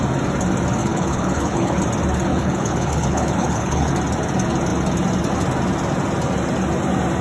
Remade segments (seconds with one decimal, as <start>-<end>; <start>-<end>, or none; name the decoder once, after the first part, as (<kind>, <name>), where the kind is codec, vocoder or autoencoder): 0.8-1.8 (codec, HILCodec); 2.3-3.9